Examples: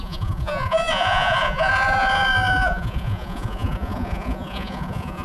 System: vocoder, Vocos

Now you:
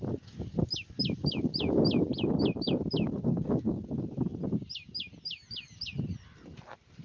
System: none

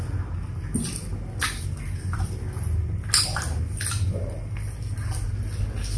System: none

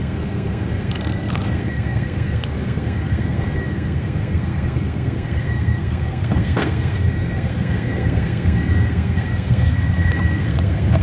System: codec, SNAC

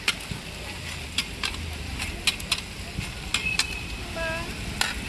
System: none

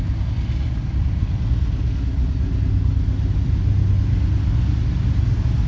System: none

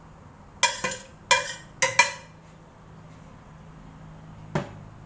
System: none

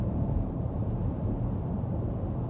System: vocoder, BigVGAN v2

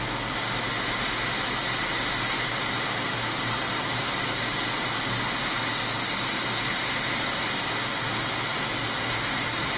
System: none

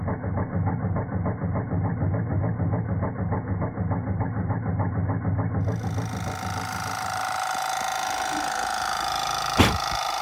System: none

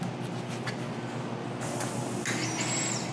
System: none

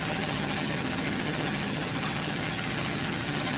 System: vocoder, HiFi-GAN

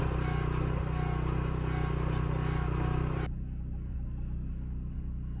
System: none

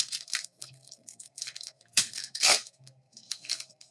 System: codec, SNAC